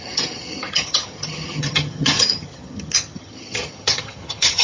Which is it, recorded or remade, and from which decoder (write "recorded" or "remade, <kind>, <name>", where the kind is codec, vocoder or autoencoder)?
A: remade, vocoder, HiFi-GAN